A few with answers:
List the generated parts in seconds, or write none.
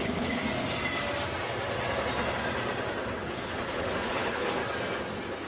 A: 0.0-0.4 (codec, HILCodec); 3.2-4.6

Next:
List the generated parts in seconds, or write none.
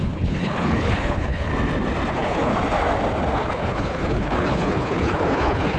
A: 0.0-1.5 (codec, HILCodec); 2.1-2.5; 3.3-5.8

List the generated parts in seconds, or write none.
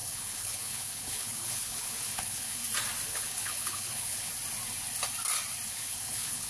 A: 0.0-2.6 (codec, HILCodec); 3.1-4.3; 5.7-6.5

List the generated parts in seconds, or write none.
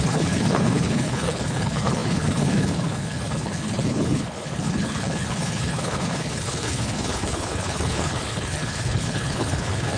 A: 0.0-10.0 (codec, HILCodec)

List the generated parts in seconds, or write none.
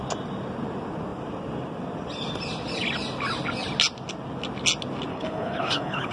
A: 5.1-6.1 (codec, HILCodec)